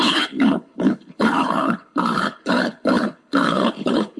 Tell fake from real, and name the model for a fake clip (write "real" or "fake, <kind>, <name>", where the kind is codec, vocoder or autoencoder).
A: fake, codec, HILCodec